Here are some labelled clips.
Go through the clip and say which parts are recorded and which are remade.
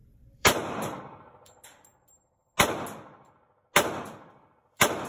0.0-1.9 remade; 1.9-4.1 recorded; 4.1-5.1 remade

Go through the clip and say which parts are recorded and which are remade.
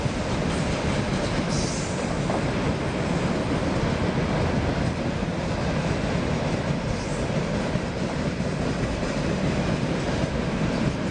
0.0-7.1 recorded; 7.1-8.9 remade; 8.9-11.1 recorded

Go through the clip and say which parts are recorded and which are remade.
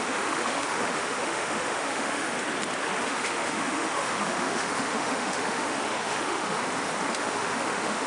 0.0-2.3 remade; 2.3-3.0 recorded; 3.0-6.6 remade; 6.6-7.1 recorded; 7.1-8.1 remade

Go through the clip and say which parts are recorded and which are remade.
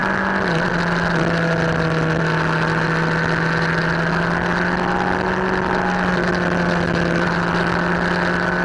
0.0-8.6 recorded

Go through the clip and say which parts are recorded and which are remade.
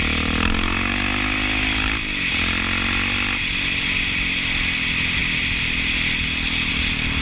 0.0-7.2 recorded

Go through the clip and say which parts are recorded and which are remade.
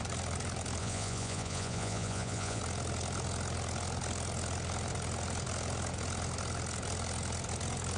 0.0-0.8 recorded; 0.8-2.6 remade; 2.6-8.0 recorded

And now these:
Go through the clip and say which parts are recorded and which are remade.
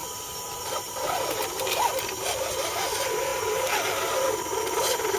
0.0-5.2 recorded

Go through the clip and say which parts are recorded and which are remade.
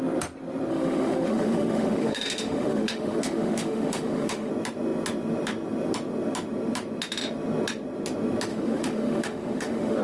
0.0-0.7 recorded; 0.7-4.5 remade; 4.5-8.5 recorded; 8.5-10.0 remade